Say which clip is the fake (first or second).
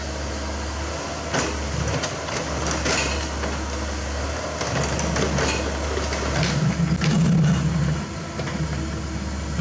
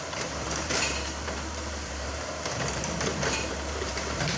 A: second